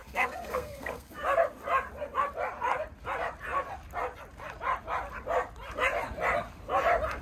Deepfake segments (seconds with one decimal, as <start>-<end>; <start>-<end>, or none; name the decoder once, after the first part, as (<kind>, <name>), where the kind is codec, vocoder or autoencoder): 0.0-1.2 (codec, SNAC)

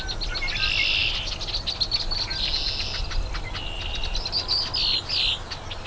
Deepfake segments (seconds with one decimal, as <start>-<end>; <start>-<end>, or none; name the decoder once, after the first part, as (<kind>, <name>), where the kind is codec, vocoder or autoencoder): none